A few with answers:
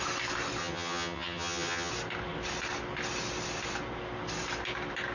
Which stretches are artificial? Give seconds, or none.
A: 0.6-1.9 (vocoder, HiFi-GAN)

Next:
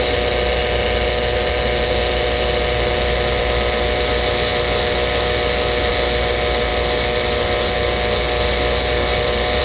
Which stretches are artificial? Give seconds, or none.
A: none

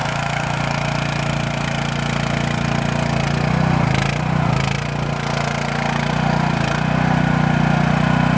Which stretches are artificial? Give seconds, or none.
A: 0.0-0.6 (autoencoder, DAC-VAE)

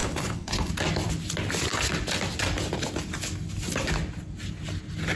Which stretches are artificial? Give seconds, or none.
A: 0.0-0.7 (codec, HILCodec)

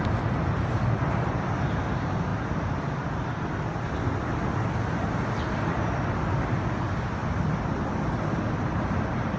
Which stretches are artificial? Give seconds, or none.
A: none

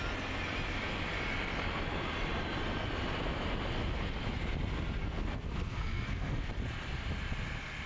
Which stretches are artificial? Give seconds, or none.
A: 5.0-6.5 (codec, SNAC)

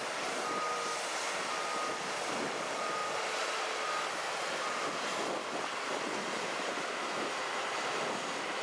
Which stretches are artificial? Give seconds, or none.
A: 0.0-3.0 (vocoder, BigVGAN v2); 4.2-8.6